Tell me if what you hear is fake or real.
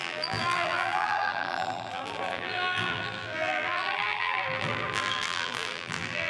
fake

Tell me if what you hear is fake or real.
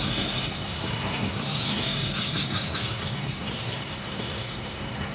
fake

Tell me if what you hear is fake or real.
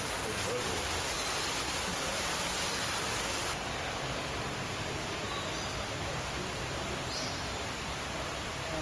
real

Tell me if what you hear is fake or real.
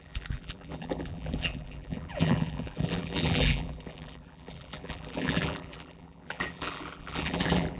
fake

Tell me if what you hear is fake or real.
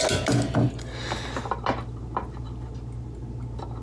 real